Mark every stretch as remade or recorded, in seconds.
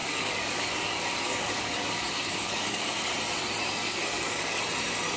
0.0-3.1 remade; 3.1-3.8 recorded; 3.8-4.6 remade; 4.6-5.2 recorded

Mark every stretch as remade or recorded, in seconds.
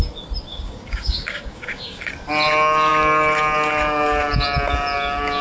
0.0-0.5 recorded; 0.5-2.0 remade; 2.0-5.4 recorded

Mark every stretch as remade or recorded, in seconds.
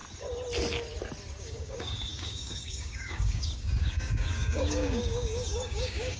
0.0-1.4 recorded; 1.4-6.2 remade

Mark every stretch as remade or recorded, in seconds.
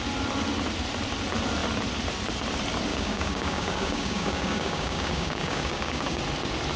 0.0-2.9 recorded; 2.9-6.2 remade; 6.2-6.8 recorded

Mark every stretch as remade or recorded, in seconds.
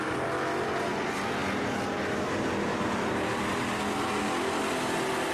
0.0-5.3 recorded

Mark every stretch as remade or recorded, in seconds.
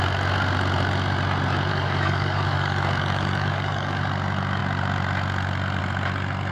0.0-1.7 recorded; 1.7-4.0 remade; 4.0-6.5 recorded